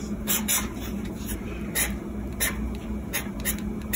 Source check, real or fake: fake